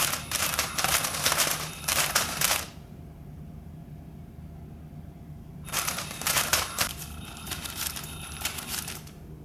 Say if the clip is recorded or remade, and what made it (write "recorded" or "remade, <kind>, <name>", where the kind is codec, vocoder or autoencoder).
remade, vocoder, BigVGAN v2